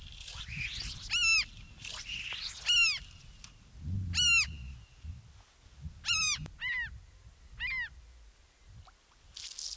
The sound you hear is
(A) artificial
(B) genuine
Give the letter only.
B